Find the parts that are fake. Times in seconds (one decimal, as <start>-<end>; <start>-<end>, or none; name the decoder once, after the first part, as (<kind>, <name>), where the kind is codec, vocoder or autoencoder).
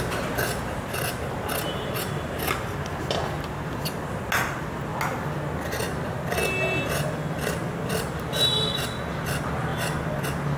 none